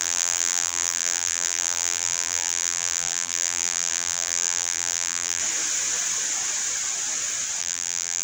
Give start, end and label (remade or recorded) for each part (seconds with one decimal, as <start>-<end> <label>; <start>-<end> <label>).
0.0-5.4 remade; 5.4-7.6 recorded; 7.6-8.2 remade